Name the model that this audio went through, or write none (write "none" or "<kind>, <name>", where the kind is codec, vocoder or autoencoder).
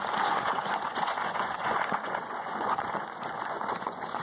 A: vocoder, Vocos